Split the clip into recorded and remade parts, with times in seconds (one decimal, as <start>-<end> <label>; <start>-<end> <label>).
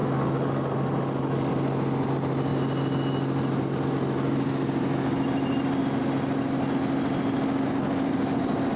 0.0-1.5 remade; 1.5-8.8 recorded